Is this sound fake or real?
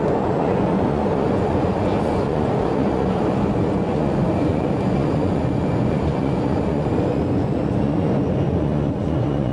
fake